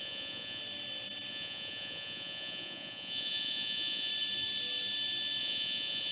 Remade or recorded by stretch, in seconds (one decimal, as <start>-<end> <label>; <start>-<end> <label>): 0.0-0.6 remade; 0.6-1.3 recorded; 1.3-4.1 remade; 4.1-5.4 recorded; 5.4-6.1 remade

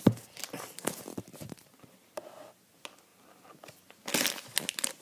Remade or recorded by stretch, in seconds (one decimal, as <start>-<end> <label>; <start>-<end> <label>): 0.0-5.0 recorded

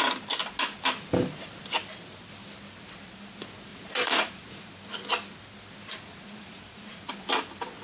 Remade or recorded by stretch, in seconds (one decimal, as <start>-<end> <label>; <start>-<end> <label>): 0.0-3.7 recorded; 3.7-4.7 remade; 4.7-5.9 recorded; 5.9-7.1 remade; 7.1-7.8 recorded

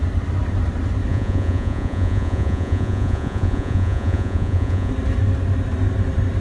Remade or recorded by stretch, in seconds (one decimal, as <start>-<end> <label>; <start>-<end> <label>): 0.0-1.1 recorded; 1.1-4.9 remade; 4.9-6.4 recorded

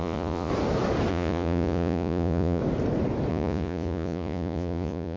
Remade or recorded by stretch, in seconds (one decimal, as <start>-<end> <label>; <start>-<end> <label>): 0.0-0.5 remade; 0.5-1.1 recorded; 1.1-2.6 remade; 2.6-3.3 recorded; 3.3-5.2 remade

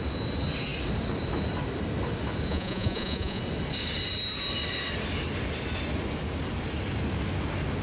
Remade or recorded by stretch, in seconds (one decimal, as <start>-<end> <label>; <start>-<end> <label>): 0.0-2.5 recorded; 2.5-3.4 remade; 3.4-7.8 recorded

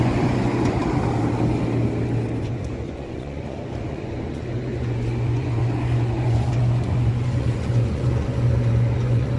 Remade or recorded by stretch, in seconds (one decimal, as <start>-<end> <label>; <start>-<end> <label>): 0.0-0.8 remade; 0.8-2.4 recorded; 2.4-9.4 remade